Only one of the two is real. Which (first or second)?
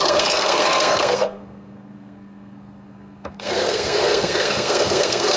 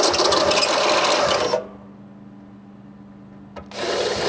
second